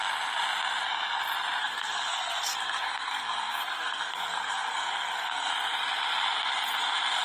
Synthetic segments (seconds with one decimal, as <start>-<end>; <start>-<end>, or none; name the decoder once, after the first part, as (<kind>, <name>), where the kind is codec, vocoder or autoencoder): 1.6-5.5 (codec, SNAC)